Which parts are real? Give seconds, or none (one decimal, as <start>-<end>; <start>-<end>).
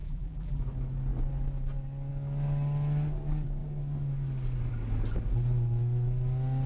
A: 0.6-6.7